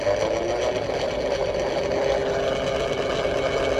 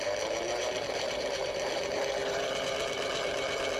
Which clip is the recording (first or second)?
first